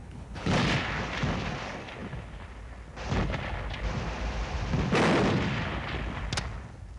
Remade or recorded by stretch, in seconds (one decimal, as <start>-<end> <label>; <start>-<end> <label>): 0.0-0.5 remade; 0.5-7.0 recorded